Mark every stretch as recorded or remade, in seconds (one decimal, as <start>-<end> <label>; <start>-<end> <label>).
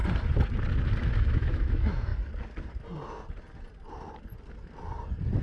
0.0-1.3 recorded; 1.3-2.1 remade; 2.1-5.4 recorded